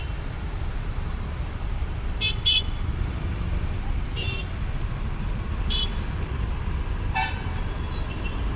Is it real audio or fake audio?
fake